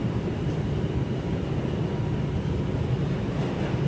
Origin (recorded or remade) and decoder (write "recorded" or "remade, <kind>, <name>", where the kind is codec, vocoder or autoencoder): recorded